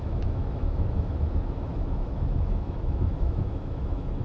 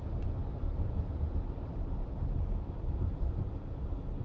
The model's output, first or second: first